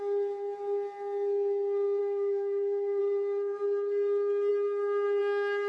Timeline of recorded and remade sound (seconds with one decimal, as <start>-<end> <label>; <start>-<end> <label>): 0.0-2.0 recorded; 2.0-3.0 remade; 3.0-5.7 recorded